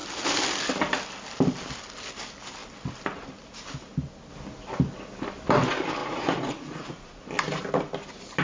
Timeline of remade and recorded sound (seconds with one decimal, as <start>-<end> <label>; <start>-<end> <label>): 0.0-6.0 recorded; 6.0-7.2 remade; 7.2-8.4 recorded

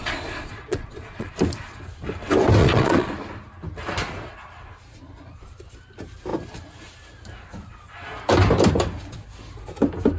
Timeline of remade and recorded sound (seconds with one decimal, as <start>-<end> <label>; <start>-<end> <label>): 0.0-1.3 remade; 1.3-2.6 recorded; 2.6-3.1 remade; 3.1-10.2 recorded

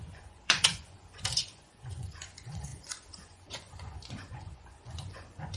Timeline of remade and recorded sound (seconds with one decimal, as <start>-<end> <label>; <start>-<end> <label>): 0.0-5.6 remade

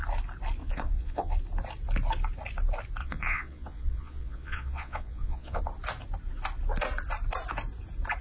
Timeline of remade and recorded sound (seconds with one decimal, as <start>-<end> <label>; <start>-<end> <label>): 0.0-0.6 recorded; 0.6-1.3 remade; 1.3-3.0 recorded; 3.0-5.6 remade; 5.6-8.2 recorded

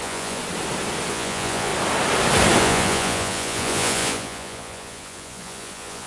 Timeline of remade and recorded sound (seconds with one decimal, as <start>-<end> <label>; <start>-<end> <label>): 0.0-0.4 remade; 0.4-1.1 recorded; 1.1-1.7 remade; 1.7-2.6 recorded; 2.6-6.1 remade

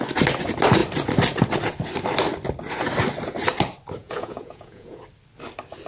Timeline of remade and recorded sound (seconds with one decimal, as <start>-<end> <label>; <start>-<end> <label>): 0.0-4.0 recorded; 4.0-5.0 remade; 5.0-5.9 recorded

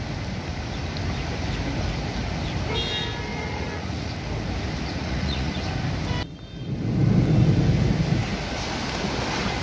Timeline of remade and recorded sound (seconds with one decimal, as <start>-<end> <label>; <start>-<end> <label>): 0.0-3.3 recorded; 3.3-4.1 remade; 4.1-5.0 recorded; 5.0-5.5 remade; 5.5-9.6 recorded